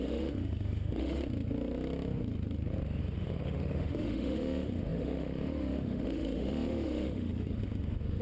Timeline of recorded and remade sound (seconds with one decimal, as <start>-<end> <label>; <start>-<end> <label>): 0.0-1.2 remade; 1.2-3.0 recorded; 3.0-8.2 remade